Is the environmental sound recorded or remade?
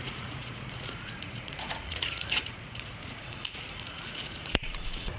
remade